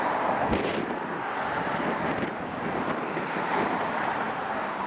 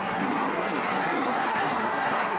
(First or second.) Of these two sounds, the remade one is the second